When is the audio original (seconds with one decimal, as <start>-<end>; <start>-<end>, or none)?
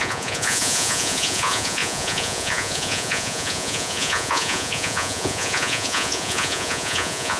none